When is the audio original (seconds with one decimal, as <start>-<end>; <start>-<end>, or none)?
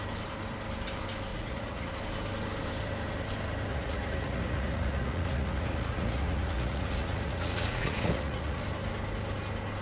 0.0-1.3; 1.9-3.7; 8.6-9.8